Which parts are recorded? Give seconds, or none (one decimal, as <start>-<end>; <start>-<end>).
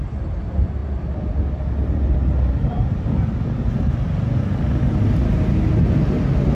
0.0-6.5